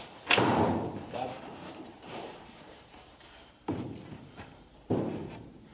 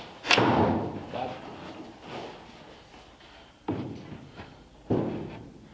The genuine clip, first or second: second